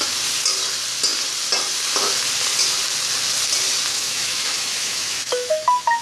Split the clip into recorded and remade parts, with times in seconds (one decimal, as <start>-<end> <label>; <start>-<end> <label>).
0.0-3.9 recorded; 3.9-6.0 remade